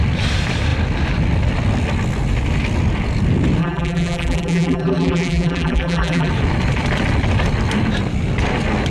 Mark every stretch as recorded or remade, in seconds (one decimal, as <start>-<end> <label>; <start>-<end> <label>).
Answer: 0.0-3.6 recorded; 3.6-6.3 remade; 6.3-8.9 recorded